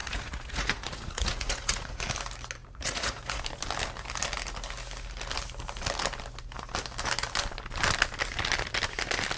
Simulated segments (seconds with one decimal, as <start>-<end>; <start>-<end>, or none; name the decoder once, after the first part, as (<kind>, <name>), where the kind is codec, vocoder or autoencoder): 0.0-2.0 (vocoder, Vocos); 2.6-3.4